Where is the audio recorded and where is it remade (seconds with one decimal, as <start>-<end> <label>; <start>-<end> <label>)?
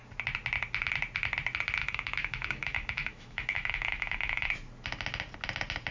0.0-1.8 recorded; 1.8-4.5 remade; 4.5-5.9 recorded